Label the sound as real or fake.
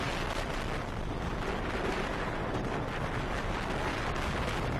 real